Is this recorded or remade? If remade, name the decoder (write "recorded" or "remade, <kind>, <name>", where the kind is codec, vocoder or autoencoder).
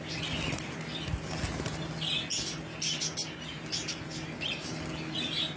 recorded